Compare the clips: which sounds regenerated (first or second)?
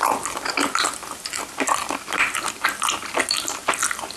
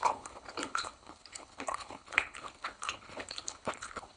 second